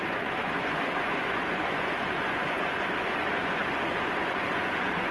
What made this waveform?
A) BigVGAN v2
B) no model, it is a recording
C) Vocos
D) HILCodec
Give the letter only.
C